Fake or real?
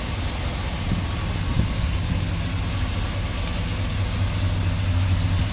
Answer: real